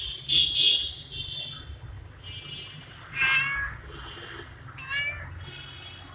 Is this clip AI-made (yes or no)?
no